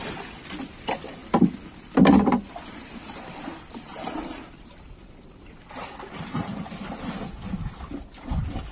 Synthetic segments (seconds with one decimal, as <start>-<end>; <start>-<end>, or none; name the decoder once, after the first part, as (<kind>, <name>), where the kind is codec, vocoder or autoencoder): 1.2-5.3 (vocoder, BigVGAN v2)